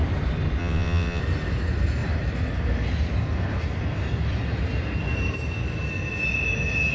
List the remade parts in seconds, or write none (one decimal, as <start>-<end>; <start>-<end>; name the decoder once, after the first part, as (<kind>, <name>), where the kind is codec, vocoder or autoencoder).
0.6-1.2 (vocoder, WaveNeXt)